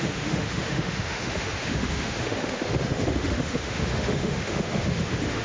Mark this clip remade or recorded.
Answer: remade